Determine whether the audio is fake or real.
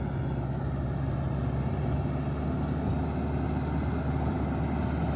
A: real